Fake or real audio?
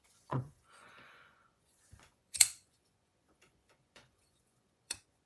fake